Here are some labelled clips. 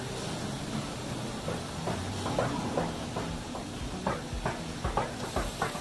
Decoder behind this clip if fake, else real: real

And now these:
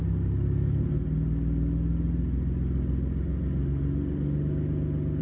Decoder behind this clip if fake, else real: real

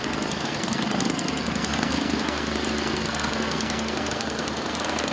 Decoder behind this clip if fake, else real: fake, codec, SNAC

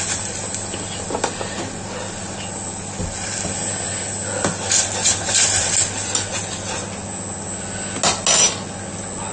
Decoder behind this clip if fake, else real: real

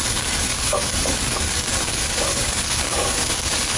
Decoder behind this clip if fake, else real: fake, codec, DAC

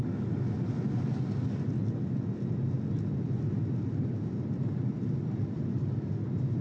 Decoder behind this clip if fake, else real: real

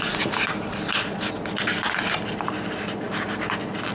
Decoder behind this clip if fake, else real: real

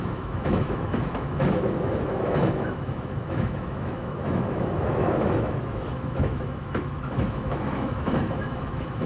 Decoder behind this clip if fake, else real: fake, autoencoder, DAC-VAE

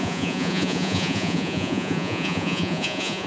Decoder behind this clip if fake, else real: fake, vocoder, Vocos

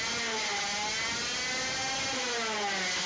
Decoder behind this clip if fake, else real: real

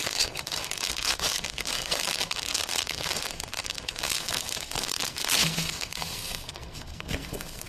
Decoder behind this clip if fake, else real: fake, codec, SNAC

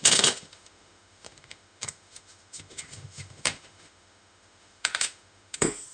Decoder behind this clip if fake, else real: fake, autoencoder, DAC-VAE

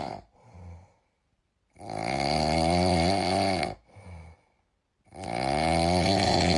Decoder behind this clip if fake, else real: real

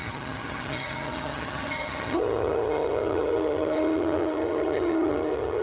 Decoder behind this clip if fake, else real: fake, vocoder, HiFi-GAN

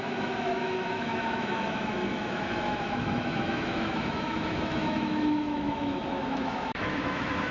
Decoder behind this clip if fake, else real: fake, autoencoder, DAC-VAE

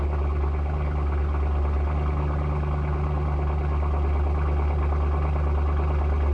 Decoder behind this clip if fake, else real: real